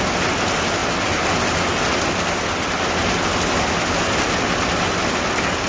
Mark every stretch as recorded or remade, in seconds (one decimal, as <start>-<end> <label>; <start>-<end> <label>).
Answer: 0.0-5.7 recorded